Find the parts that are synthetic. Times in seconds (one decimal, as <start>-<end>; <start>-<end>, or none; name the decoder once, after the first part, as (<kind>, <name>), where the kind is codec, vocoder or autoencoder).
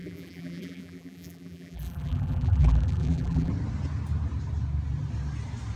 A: 0.0-3.5 (vocoder, BigVGAN v2)